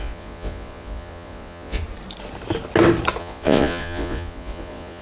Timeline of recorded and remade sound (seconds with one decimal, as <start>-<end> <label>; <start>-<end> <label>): 0.0-1.8 remade; 1.8-3.2 recorded; 3.2-5.0 remade